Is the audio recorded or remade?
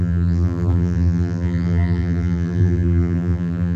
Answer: remade